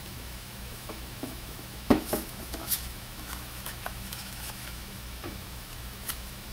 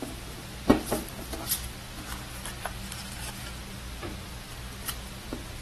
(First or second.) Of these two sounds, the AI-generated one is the first